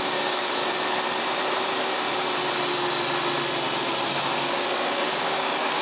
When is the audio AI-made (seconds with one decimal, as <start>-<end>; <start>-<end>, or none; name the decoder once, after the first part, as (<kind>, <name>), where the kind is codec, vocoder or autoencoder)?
0.0-0.6 (codec, DAC); 4.1-5.8